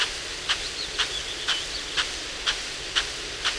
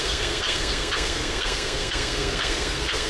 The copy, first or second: second